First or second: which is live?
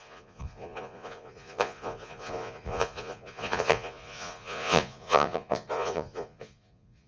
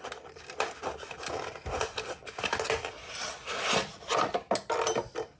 second